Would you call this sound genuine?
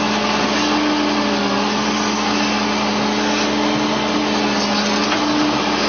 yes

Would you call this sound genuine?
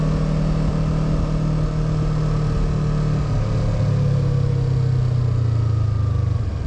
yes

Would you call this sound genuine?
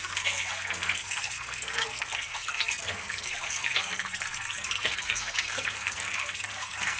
no